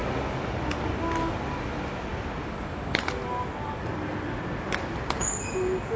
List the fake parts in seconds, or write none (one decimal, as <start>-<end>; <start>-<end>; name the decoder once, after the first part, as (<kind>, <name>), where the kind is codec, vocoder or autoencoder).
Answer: none